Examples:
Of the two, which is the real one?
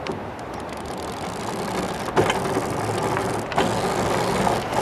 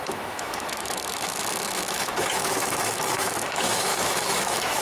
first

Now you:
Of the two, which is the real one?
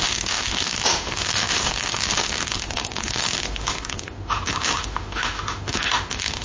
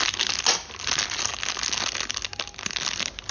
second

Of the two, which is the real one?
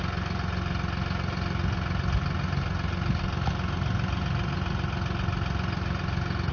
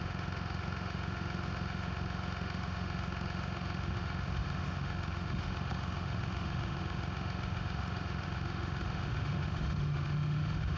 first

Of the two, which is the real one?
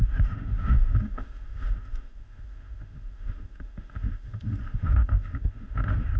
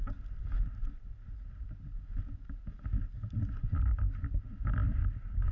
second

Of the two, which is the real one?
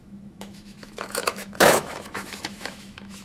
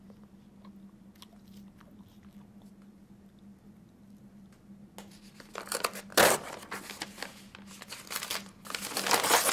second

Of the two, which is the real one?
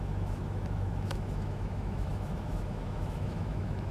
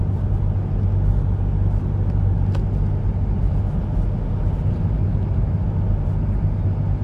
second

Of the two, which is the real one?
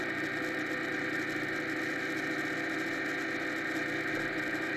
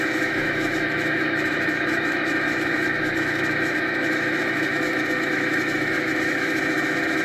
first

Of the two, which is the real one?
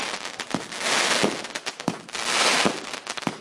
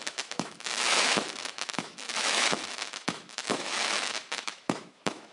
first